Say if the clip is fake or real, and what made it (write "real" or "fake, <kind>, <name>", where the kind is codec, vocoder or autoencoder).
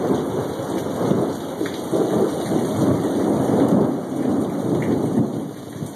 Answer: real